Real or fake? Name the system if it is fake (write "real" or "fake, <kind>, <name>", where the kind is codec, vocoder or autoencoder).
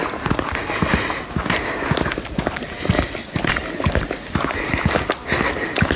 real